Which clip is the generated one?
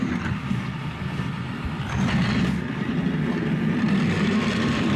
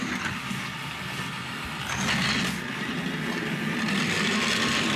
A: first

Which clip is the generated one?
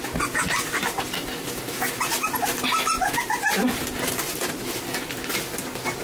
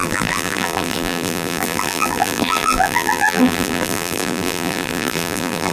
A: second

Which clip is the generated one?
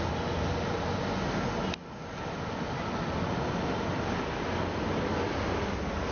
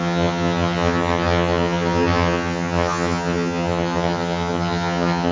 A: second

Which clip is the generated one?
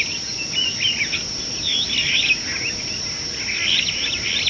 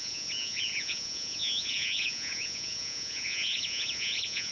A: second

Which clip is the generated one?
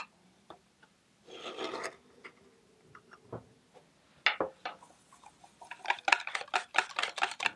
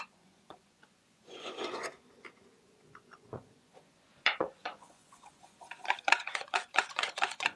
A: second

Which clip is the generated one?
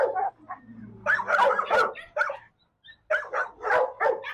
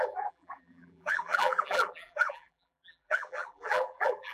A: second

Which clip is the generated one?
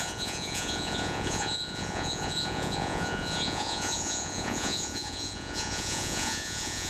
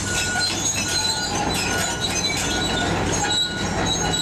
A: first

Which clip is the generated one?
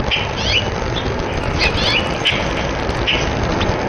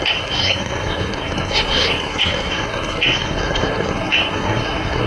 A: second